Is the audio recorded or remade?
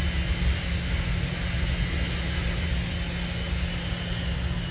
recorded